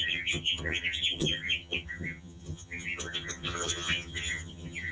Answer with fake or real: fake